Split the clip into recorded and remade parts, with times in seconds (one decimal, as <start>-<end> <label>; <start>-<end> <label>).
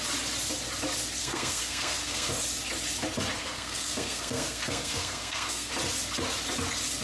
0.0-1.2 recorded; 1.2-2.3 remade; 2.3-3.4 recorded; 3.4-5.7 remade; 5.7-7.0 recorded